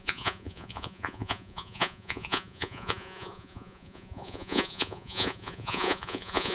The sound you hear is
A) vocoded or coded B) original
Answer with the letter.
A